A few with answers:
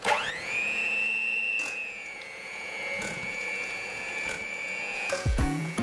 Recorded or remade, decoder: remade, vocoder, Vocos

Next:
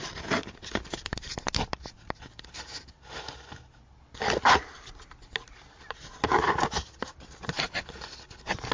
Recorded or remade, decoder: recorded